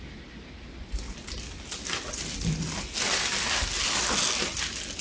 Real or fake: real